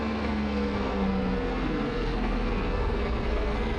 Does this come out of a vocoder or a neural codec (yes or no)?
yes